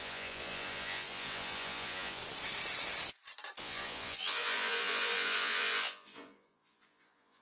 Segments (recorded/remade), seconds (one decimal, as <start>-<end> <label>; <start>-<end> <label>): 0.0-2.2 remade; 2.2-3.6 recorded; 3.6-7.4 remade